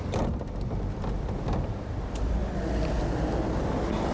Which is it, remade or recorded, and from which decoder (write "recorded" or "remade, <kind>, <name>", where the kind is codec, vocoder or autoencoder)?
remade, vocoder, BigVGAN v2